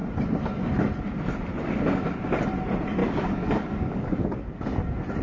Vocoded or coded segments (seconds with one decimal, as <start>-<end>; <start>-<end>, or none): 3.0-4.6